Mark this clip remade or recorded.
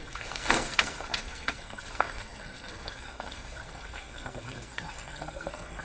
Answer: remade